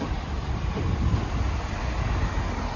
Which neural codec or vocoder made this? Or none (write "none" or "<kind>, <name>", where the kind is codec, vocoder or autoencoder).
none